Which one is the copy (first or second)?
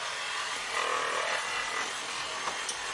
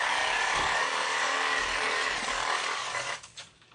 second